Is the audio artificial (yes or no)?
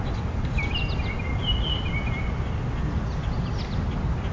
no